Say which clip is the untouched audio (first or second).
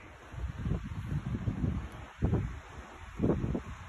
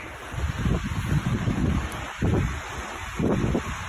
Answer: first